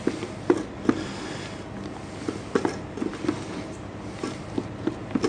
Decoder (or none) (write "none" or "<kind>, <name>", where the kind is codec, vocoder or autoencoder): none